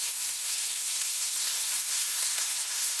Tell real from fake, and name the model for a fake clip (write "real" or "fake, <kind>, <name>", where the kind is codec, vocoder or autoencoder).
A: fake, codec, SNAC